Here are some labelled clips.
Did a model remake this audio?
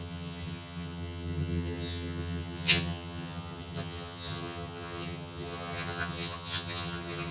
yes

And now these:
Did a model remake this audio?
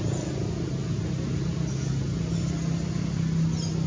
no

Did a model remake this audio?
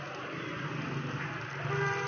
no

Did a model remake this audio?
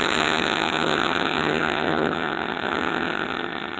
yes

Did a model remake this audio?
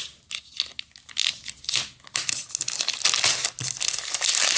no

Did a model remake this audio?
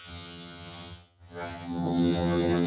yes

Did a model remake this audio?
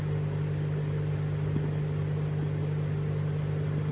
no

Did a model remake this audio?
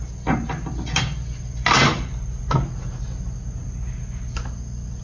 no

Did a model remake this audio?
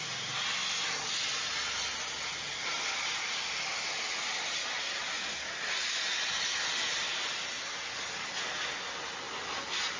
no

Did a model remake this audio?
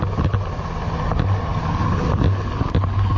no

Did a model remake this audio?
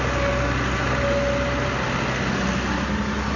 no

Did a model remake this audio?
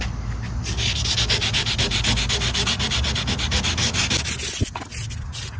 no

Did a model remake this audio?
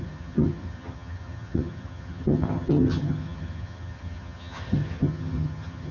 yes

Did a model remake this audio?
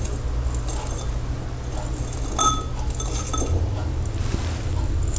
no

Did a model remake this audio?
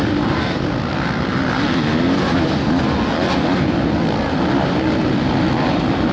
no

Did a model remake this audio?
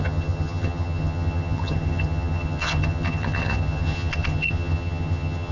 yes